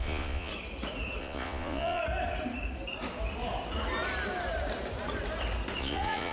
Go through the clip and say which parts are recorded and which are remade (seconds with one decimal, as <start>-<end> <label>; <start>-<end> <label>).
0.0-0.5 remade; 0.5-1.2 recorded; 1.2-2.0 remade; 2.0-5.8 recorded; 5.8-6.3 remade